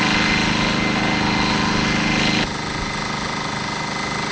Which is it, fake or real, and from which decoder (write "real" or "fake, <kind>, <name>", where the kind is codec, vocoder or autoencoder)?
real